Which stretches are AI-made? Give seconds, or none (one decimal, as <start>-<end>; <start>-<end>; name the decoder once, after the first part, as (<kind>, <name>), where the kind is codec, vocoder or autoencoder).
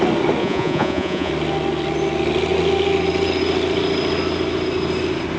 0.4-1.3 (vocoder, Vocos)